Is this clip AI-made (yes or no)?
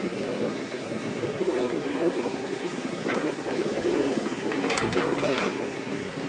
yes